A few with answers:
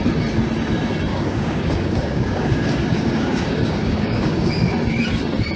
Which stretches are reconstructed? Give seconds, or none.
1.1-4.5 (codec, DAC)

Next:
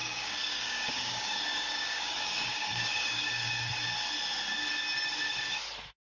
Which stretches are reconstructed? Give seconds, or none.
0.0-3.7 (codec, DAC)

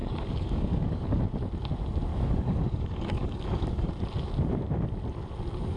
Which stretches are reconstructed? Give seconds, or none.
0.0-1.2 (codec, DAC); 2.1-3.9